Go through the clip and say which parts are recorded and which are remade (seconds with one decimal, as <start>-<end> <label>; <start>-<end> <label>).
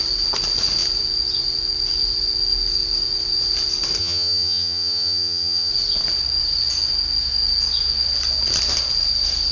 0.0-4.0 recorded; 4.0-5.7 remade; 5.7-9.5 recorded